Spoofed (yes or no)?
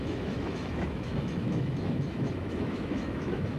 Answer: yes